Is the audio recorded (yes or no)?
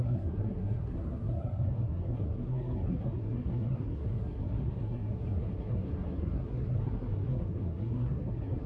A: no